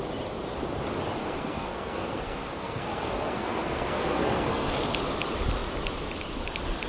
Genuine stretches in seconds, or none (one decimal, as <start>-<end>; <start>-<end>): 0.0-1.2; 4.8-6.9